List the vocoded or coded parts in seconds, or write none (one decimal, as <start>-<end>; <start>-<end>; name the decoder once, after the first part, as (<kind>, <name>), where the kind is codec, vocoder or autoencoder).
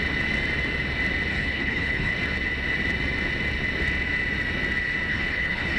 1.3-2.1 (codec, HILCodec); 5.1-5.8